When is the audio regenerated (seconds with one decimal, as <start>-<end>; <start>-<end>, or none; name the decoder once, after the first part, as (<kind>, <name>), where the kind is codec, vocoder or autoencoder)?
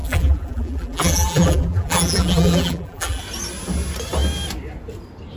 0.0-3.2 (vocoder, BigVGAN v2)